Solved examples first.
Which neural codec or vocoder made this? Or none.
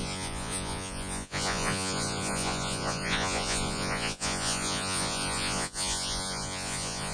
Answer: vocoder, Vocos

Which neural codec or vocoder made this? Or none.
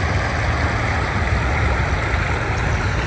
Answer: none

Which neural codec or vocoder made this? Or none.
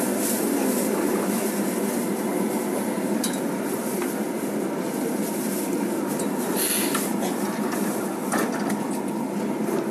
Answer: none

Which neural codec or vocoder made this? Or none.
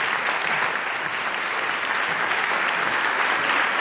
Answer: vocoder, BigVGAN v2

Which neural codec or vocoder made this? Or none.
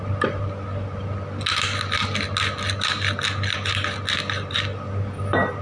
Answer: none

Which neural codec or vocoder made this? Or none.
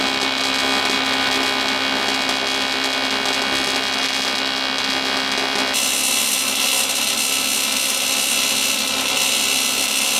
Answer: none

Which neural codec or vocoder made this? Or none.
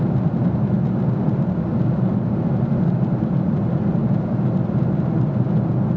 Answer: none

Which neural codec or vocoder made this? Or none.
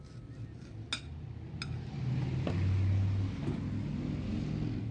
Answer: none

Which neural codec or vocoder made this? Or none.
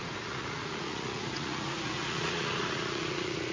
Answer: vocoder, Vocos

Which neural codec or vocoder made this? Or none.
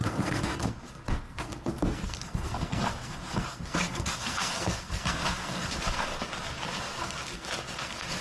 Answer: codec, SNAC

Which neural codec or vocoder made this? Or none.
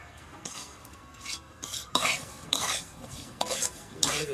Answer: codec, SNAC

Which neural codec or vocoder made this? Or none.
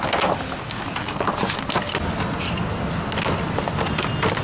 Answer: none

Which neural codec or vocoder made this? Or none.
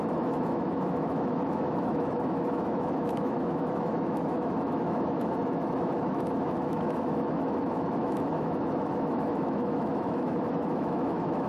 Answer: autoencoder, DAC-VAE